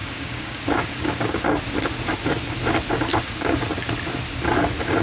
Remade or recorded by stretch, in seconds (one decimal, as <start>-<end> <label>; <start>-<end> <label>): 0.0-1.4 remade; 1.4-3.1 recorded; 3.1-3.6 remade; 3.6-5.0 recorded